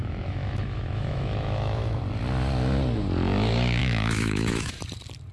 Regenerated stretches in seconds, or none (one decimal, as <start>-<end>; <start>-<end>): 0.0-2.0; 3.8-4.7